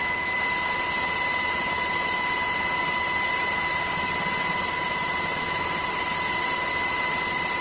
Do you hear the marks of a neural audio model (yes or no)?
no